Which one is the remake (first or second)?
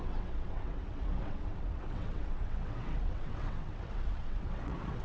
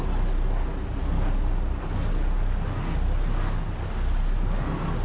first